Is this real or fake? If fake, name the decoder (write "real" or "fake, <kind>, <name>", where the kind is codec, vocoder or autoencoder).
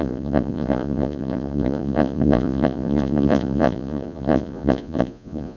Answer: fake, vocoder, Vocos